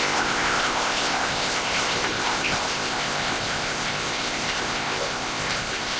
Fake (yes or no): yes